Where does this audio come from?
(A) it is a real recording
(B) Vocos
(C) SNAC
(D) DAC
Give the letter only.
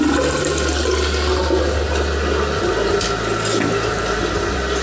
A